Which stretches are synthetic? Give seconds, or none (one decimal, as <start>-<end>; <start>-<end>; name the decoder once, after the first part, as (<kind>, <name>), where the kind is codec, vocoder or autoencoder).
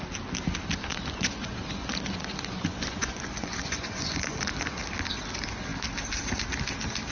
0.8-4.8 (vocoder, Vocos)